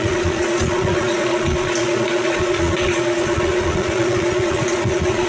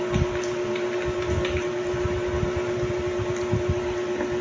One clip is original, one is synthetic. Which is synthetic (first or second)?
first